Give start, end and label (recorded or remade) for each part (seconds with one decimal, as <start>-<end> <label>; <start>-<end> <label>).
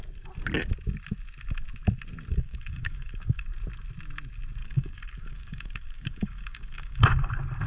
0.0-2.3 recorded; 2.3-3.4 remade; 3.4-4.6 recorded; 4.6-7.0 remade; 7.0-7.7 recorded